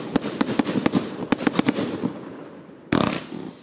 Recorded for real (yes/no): no